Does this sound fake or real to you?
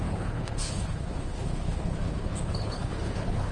fake